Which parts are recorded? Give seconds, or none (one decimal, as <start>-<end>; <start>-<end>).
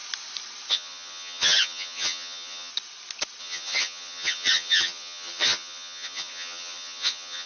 0.0-0.7; 2.7-3.4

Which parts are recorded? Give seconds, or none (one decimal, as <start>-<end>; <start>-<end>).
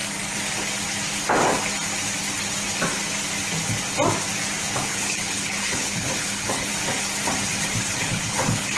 0.0-4.6; 6.7-8.0